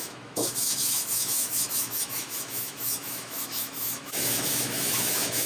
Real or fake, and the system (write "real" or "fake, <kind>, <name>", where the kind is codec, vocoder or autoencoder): fake, autoencoder, DAC-VAE